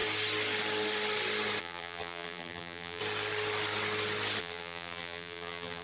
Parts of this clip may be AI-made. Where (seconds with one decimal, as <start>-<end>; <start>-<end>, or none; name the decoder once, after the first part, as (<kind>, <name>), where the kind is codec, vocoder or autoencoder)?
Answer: 1.6-3.0 (vocoder, BigVGAN v2); 4.4-5.8